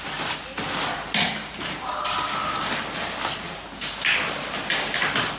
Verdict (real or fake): real